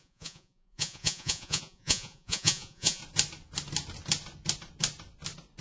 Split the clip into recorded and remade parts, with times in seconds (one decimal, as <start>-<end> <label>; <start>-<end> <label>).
0.0-3.0 remade; 3.0-5.6 recorded